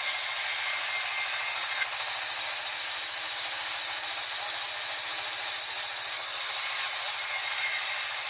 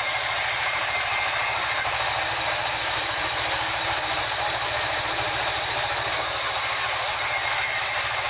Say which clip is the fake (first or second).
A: second